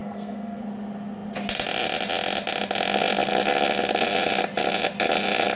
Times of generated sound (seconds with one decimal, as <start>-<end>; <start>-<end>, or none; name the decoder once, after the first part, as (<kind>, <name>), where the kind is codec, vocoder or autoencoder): 0.0-0.6 (codec, SNAC)